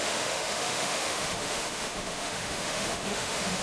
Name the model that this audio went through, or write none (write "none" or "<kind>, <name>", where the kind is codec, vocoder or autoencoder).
autoencoder, DAC-VAE